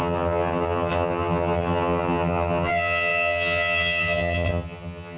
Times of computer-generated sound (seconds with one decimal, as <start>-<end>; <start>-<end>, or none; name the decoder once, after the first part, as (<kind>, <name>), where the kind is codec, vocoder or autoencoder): 0.0-5.2 (vocoder, HiFi-GAN)